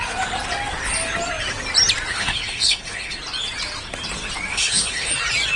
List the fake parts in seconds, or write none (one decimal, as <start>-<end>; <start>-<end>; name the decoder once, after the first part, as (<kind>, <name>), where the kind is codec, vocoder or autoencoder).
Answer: 2.1-3.2 (codec, HILCodec); 4.5-5.1